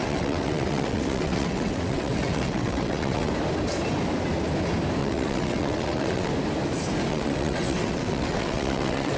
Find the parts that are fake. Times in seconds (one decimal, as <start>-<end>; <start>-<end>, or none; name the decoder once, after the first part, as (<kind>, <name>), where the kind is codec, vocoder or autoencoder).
0.0-3.3 (vocoder, WaveNeXt); 5.0-6.3; 7.1-9.2